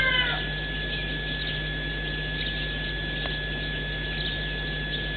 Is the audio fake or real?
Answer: real